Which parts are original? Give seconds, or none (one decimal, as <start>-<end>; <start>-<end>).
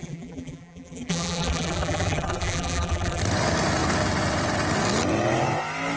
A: 3.2-6.0